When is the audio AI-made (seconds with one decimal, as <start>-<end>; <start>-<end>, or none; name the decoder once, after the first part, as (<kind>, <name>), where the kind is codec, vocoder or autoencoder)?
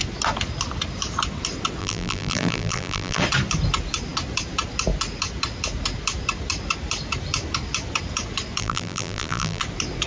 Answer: 1.8-3.2 (vocoder, BigVGAN v2); 8.6-9.6